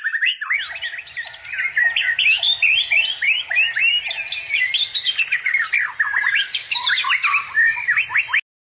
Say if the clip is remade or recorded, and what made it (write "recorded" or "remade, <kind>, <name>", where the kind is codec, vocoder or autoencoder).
recorded